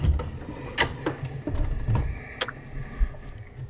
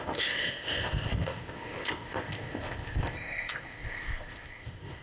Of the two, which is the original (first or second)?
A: first